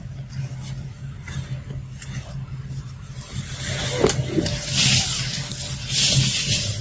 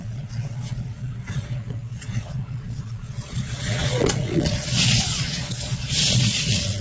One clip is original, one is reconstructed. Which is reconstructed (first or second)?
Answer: second